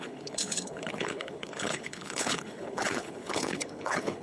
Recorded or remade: remade